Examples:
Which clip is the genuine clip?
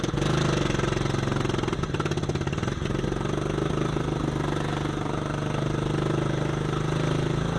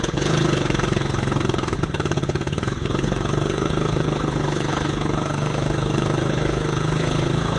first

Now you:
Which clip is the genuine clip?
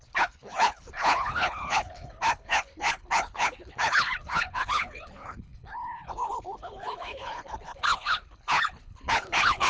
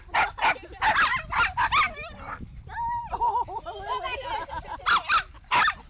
second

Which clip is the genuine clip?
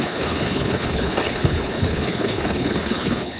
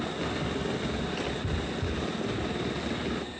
second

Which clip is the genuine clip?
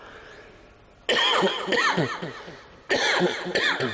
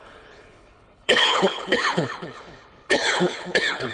first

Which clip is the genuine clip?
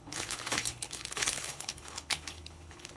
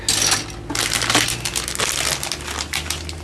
second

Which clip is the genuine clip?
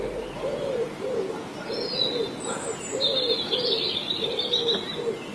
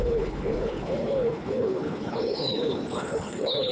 first